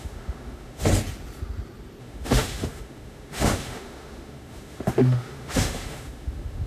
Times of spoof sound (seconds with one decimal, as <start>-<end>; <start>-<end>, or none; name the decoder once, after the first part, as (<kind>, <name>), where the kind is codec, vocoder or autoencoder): 0.0-0.9 (autoencoder, DAC-VAE); 2.0-6.7